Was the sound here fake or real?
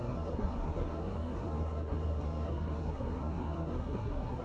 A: fake